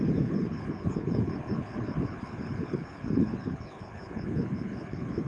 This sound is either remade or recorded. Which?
remade